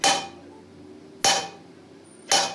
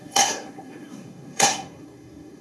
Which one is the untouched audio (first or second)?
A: first